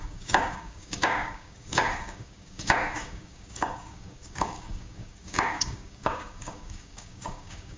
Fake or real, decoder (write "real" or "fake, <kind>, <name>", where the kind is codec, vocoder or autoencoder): fake, codec, DAC